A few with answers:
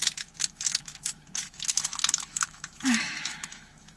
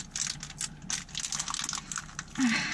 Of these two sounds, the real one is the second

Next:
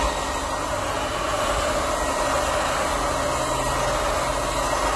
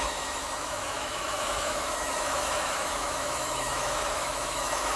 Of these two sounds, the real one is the first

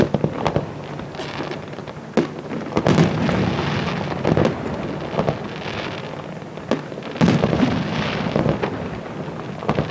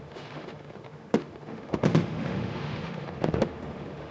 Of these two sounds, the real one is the first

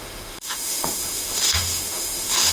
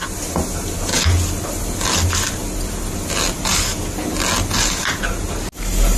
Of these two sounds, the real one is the second